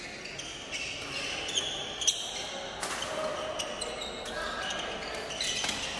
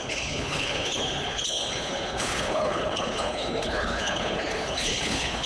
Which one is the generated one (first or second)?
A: second